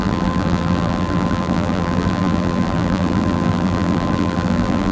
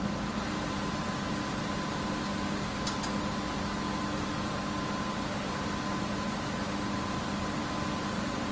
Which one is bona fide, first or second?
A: second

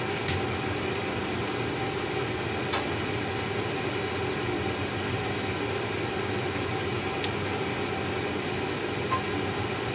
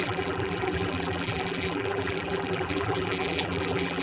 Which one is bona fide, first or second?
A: first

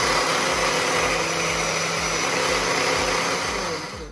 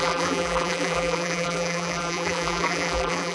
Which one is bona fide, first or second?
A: first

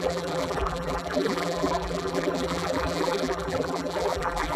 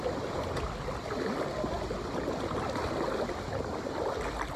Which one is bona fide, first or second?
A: second